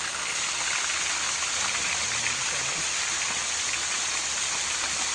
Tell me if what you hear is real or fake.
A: real